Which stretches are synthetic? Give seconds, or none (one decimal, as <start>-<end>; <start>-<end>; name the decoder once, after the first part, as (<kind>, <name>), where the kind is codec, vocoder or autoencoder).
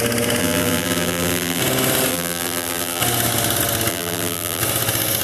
0.4-1.6 (vocoder, BigVGAN v2); 2.1-3.0; 3.9-4.6